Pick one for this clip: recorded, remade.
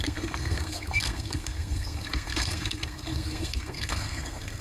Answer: remade